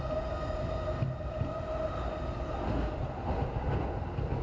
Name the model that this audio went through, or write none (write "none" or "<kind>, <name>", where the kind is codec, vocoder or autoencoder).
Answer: none